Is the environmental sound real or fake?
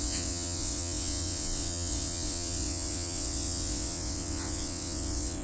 fake